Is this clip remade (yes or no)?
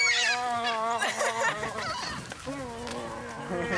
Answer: no